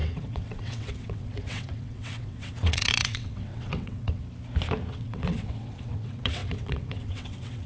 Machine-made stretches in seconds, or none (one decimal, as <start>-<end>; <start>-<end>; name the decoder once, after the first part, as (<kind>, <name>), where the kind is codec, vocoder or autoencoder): 0.0-4.2 (vocoder, WaveNeXt); 4.9-7.7